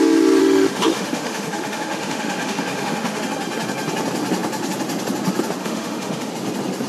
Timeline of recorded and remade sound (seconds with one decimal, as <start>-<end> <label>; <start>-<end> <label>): 0.0-0.4 recorded; 0.4-3.2 remade; 3.2-5.6 recorded; 5.6-6.3 remade; 6.3-6.9 recorded